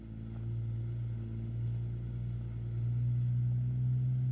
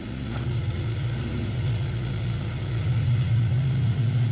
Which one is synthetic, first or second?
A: second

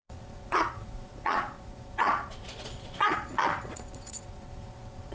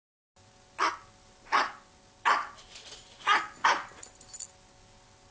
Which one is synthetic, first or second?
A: first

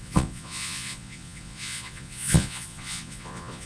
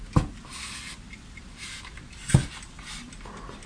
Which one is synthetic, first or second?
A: first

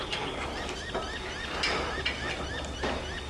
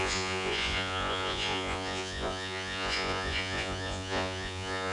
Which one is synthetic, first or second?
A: second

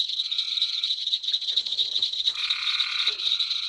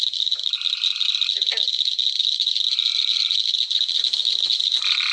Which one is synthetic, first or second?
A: first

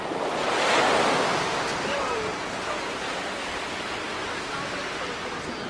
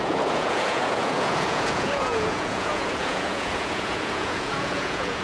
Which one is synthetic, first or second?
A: second